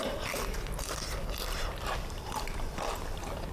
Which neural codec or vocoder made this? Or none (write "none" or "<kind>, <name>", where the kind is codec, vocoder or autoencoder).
vocoder, BigVGAN v2